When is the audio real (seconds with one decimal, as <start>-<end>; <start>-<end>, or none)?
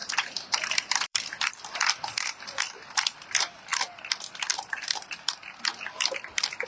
0.0-0.9